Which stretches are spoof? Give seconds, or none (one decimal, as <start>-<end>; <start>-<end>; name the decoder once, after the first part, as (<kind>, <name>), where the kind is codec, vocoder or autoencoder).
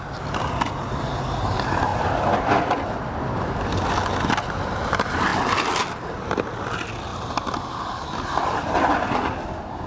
none